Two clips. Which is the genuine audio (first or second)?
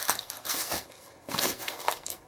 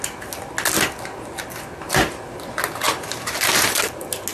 second